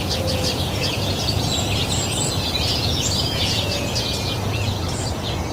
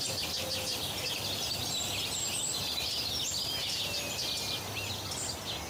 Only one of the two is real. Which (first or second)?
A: second